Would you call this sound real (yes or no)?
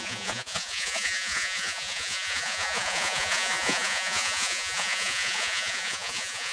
no